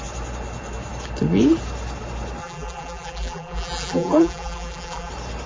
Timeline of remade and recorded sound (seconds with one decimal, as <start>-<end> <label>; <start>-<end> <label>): 0.0-2.4 recorded; 2.4-5.1 remade; 5.1-5.5 recorded